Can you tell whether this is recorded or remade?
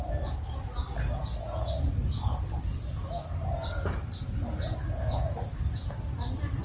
recorded